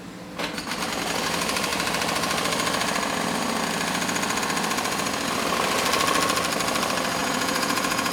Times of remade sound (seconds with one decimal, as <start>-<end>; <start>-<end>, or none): 7.2-8.1